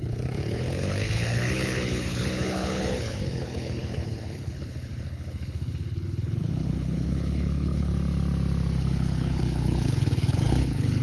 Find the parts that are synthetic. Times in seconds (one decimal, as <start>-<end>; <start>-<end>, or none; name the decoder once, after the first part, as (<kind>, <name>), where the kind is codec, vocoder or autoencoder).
0.0-7.9 (codec, HILCodec); 8.8-11.0